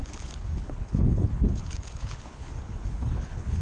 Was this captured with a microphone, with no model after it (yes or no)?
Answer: no